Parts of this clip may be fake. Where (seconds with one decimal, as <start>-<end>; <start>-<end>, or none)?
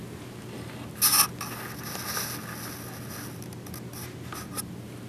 none